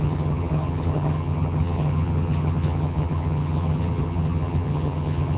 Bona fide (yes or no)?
no